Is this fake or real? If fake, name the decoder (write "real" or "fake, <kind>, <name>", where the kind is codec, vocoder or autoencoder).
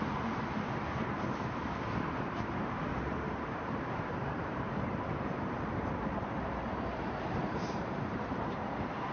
fake, vocoder, BigVGAN v2